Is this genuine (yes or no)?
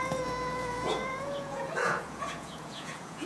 no